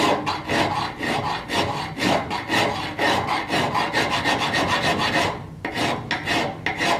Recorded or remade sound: recorded